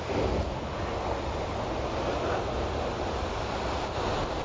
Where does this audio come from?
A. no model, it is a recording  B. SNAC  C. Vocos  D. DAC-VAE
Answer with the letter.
A